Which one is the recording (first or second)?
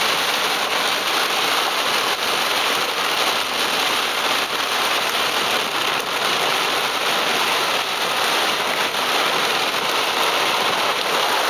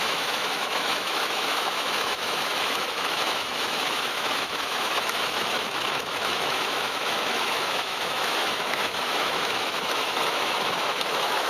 first